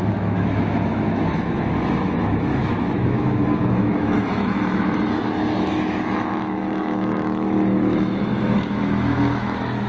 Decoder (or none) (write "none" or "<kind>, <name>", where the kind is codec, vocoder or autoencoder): autoencoder, DAC-VAE